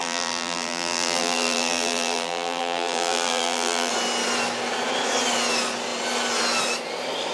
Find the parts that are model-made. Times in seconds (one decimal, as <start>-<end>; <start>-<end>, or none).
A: 0.0-3.9